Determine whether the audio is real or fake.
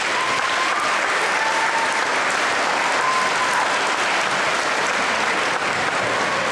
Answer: real